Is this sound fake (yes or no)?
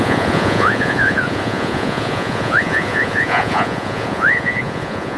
yes